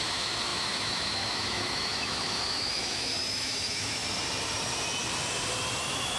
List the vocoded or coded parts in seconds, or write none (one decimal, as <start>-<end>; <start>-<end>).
0.0-4.0; 5.8-6.2

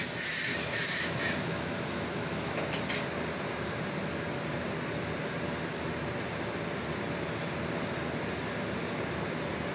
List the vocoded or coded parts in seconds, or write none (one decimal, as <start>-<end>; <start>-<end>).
0.5-2.7

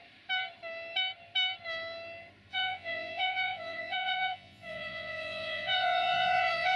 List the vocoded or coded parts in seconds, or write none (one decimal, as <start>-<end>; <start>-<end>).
2.5-6.8

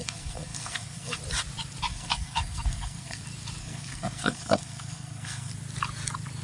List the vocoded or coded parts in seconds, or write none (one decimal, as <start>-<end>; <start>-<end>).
0.0-1.2; 1.9-3.2; 3.6-5.5

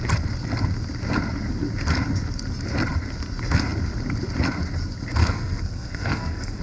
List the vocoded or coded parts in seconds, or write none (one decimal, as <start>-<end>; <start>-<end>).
5.2-6.6

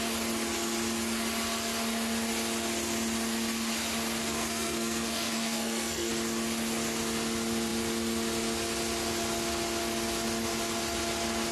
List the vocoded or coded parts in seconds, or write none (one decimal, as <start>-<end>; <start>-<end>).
4.2-6.1

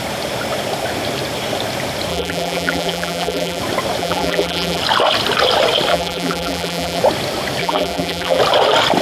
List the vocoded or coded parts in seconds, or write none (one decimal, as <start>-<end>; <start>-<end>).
2.1-3.6; 4.0-4.8; 5.9-7.0; 7.6-8.4

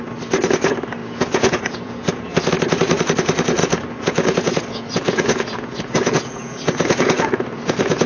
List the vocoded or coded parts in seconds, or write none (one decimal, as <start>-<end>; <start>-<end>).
1.0-2.5; 3.6-8.1